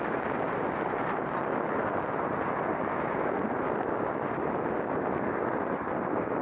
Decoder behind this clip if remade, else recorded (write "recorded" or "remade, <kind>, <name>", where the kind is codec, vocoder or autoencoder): recorded